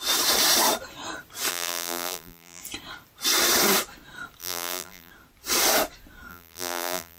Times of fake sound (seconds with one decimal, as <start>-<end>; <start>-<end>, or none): 1.5-2.6; 4.4-5.1; 6.3-7.2